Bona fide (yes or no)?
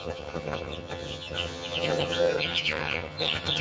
no